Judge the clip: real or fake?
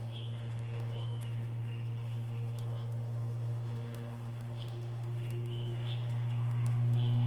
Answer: fake